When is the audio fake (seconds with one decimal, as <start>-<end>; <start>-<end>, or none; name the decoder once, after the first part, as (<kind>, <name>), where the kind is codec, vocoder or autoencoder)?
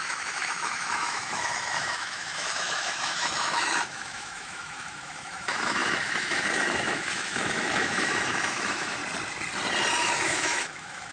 0.0-9.0 (autoencoder, DAC-VAE); 9.9-11.1